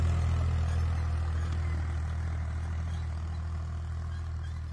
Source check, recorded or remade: recorded